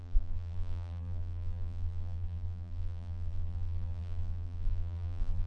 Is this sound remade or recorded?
remade